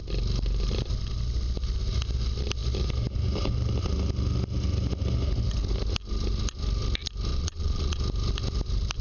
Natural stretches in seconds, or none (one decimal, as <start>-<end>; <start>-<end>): 0.0-7.3; 8.0-9.0